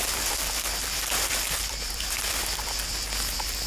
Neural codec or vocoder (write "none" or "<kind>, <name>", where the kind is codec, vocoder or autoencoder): vocoder, BigVGAN v2